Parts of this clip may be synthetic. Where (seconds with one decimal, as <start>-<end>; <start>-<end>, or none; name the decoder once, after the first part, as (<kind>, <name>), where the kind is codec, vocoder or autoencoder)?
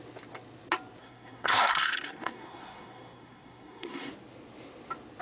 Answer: 1.0-4.1 (codec, SNAC)